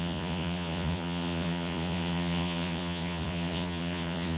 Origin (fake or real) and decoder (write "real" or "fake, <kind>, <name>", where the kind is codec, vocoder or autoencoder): fake, vocoder, Vocos